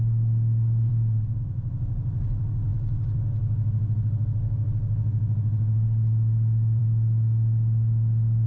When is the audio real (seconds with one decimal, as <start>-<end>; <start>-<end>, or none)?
0.0-8.5